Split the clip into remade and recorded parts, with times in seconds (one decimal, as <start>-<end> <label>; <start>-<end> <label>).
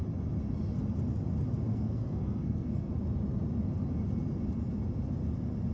0.0-1.7 recorded; 1.7-2.9 remade; 2.9-5.7 recorded